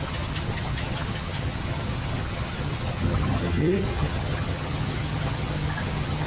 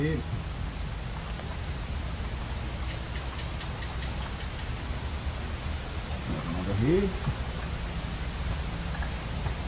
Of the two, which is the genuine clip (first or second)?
second